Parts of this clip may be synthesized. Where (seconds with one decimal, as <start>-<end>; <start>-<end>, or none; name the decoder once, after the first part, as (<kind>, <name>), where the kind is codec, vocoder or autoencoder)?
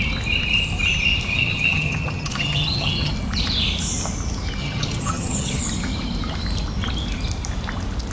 1.3-3.1 (vocoder, HiFi-GAN); 4.6-5.6